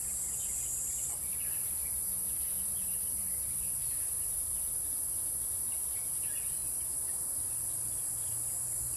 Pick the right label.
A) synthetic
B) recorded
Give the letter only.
A